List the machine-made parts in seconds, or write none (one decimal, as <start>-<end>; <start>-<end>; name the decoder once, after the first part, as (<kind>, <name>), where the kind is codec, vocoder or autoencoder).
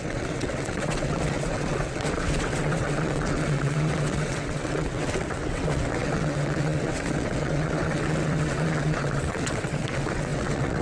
0.0-10.8 (vocoder, WaveNeXt)